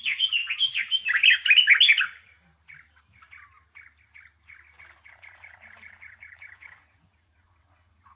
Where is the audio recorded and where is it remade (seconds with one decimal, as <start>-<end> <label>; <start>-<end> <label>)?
0.0-0.4 remade; 0.4-5.1 recorded; 5.1-8.2 remade

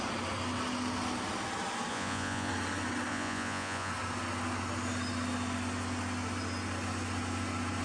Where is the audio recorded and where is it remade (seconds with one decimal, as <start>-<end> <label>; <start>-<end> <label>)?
0.0-1.9 recorded; 1.9-2.5 remade; 2.5-3.1 recorded; 3.1-3.9 remade; 3.9-7.8 recorded

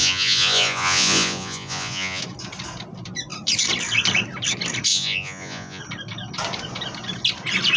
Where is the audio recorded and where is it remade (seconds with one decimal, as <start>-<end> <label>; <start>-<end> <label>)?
0.0-2.2 remade; 2.2-4.9 recorded; 4.9-5.8 remade; 5.8-7.8 recorded

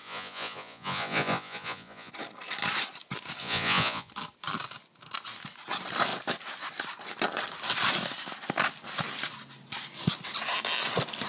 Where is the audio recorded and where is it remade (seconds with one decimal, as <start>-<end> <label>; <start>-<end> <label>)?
0.0-2.1 remade; 2.1-3.4 recorded; 3.4-4.1 remade; 4.1-11.3 recorded

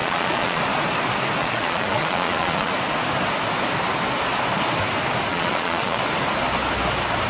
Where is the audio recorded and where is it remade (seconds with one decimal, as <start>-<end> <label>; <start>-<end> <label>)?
0.0-0.6 remade; 0.6-1.4 recorded; 1.4-2.7 remade; 2.7-5.3 recorded; 5.3-6.0 remade; 6.0-7.3 recorded

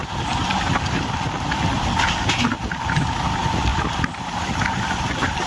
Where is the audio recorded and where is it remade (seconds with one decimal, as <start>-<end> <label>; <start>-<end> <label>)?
0.0-5.5 recorded

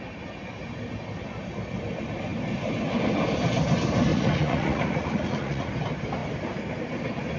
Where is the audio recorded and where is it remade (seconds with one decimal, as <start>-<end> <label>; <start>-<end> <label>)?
0.0-4.1 recorded; 4.1-5.7 remade; 5.7-7.4 recorded

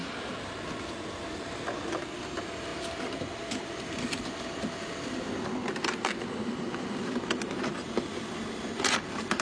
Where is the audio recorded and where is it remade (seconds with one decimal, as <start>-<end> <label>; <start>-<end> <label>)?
0.0-9.4 recorded